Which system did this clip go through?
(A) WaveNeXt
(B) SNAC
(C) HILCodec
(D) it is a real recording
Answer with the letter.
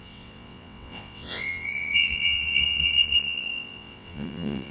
A